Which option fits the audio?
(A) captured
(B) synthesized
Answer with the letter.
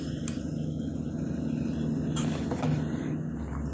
A